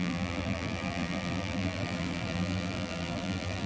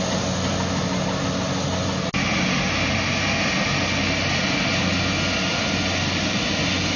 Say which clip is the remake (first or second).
first